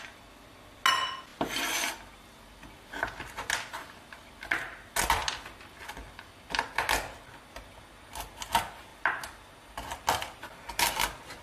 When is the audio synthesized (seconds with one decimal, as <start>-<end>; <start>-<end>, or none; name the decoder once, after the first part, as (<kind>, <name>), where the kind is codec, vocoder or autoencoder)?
none